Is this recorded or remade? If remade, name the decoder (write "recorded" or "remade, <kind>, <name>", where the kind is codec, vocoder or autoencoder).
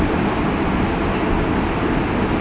recorded